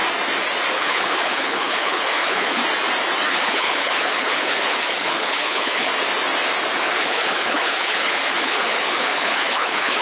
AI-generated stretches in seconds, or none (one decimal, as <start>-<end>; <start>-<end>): 0.7-2.6; 3.3-5.9; 6.8-10.0

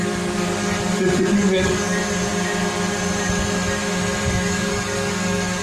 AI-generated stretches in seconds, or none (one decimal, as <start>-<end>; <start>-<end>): 0.0-2.0; 4.3-5.6

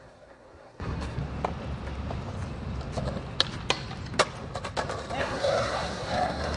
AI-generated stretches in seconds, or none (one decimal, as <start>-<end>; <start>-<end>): 0.0-1.2; 5.2-6.6

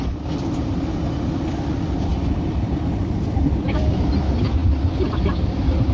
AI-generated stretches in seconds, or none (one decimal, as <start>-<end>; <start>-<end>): none

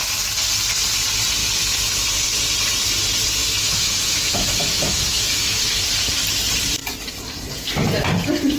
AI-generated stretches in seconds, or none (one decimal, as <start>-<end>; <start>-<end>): 3.4-5.8

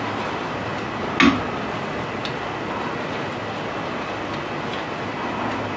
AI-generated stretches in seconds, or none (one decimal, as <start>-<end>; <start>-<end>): none

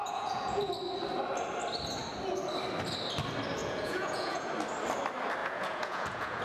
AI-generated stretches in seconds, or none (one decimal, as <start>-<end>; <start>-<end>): 0.0-0.7; 3.6-4.5; 5.4-6.4

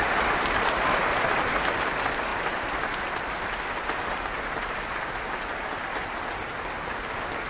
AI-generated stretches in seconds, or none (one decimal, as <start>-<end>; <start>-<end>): 2.3-3.0